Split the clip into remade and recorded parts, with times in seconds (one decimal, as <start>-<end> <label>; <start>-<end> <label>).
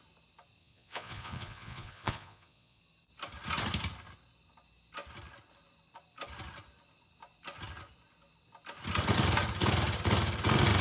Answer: 0.0-0.6 recorded; 0.6-2.8 remade; 2.8-10.8 recorded